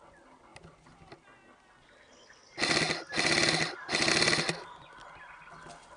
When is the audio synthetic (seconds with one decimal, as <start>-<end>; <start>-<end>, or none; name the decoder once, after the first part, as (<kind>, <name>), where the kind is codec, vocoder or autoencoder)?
none